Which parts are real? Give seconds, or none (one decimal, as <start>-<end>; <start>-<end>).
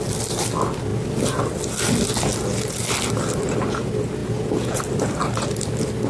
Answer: 0.0-4.2; 4.8-6.1